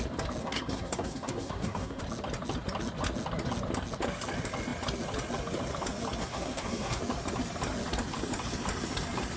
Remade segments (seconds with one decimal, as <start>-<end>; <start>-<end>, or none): 0.4-2.0; 6.2-7.0

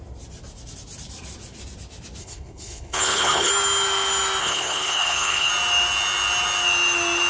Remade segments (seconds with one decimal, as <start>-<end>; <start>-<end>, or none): 2.2-3.5; 4.4-5.5

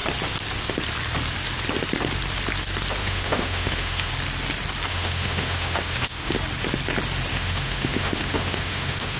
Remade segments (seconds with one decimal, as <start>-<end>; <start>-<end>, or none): 3.0-4.1; 4.9-6.3; 7.3-9.2

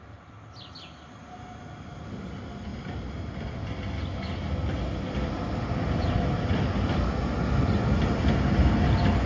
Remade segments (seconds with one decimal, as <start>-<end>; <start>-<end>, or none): none

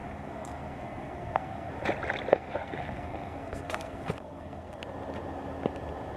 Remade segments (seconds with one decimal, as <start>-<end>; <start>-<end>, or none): 0.0-1.7; 2.3-4.8